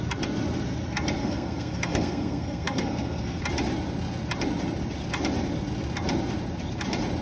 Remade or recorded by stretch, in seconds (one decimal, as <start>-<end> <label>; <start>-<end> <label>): 0.0-1.2 recorded; 1.2-3.4 remade; 3.4-7.2 recorded